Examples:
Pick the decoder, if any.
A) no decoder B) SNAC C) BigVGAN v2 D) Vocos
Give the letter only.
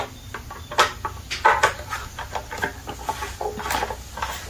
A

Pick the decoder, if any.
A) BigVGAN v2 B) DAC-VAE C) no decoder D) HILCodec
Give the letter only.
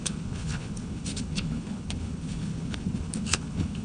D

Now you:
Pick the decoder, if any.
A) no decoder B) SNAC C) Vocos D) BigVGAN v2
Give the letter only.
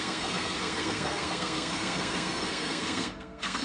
B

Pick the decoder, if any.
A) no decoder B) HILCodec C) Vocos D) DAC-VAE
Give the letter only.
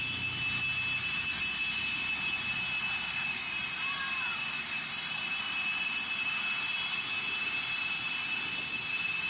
A